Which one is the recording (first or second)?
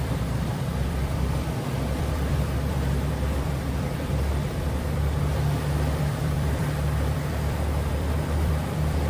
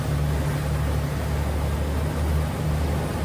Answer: second